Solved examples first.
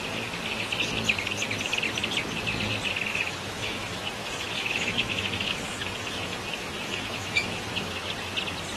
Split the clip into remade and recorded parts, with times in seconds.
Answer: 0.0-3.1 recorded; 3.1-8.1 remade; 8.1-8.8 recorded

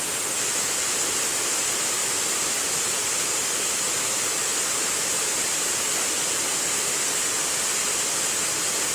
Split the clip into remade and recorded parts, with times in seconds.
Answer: 0.0-2.0 recorded; 2.0-5.4 remade; 5.4-7.7 recorded; 7.7-8.9 remade

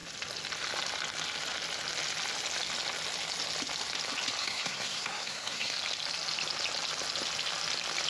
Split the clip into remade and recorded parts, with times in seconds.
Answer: 0.0-4.4 recorded; 4.4-5.7 remade; 5.7-8.1 recorded

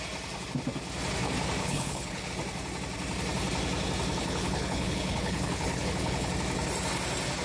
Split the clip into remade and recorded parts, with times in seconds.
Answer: 0.0-1.6 recorded; 1.6-2.3 remade; 2.3-4.2 recorded; 4.2-6.3 remade; 6.3-7.4 recorded

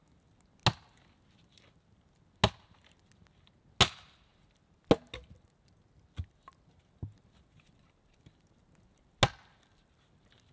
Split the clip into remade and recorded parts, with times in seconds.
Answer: 0.0-10.5 recorded